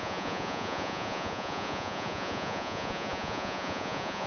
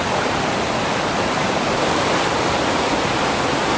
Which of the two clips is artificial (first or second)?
first